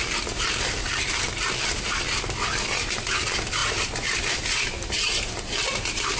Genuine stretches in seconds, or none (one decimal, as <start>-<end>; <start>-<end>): 0.0-3.6; 4.4-6.2